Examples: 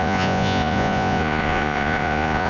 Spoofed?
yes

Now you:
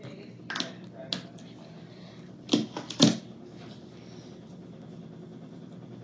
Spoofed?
no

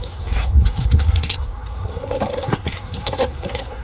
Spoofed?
yes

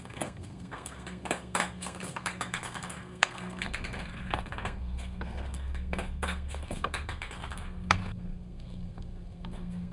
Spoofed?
yes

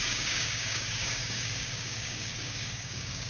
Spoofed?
yes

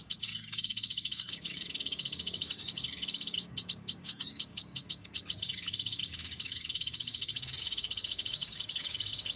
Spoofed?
yes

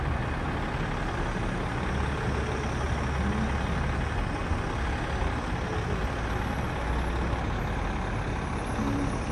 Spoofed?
no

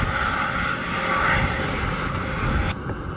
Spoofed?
no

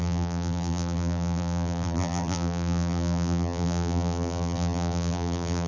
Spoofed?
yes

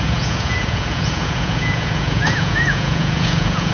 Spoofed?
yes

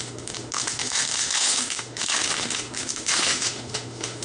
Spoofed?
yes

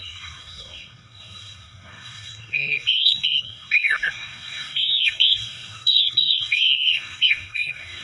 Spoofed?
yes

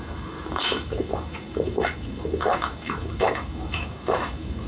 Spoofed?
yes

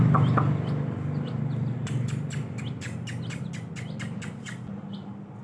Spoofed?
no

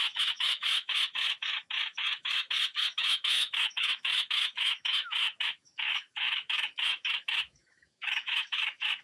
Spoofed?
yes